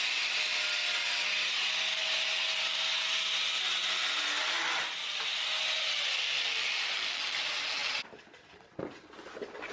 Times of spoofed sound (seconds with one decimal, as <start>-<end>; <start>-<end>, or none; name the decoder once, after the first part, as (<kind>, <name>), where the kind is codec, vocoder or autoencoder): none